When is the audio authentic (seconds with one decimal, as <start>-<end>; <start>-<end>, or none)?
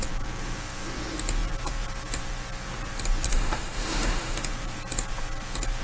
0.0-3.3; 4.4-5.8